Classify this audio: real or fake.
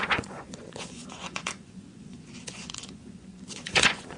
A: fake